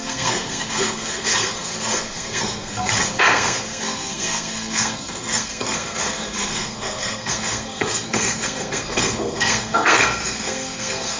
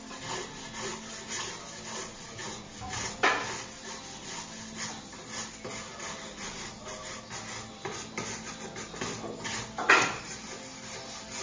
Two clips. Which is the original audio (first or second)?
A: second